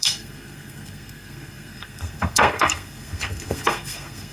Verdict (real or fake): fake